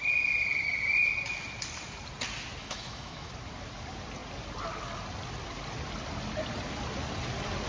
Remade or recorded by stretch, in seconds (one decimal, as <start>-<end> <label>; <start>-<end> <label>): 0.0-2.6 recorded; 2.6-3.3 remade; 3.3-7.7 recorded